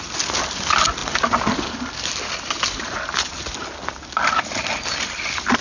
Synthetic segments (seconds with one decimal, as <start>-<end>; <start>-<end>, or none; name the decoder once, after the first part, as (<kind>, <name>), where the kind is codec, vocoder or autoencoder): none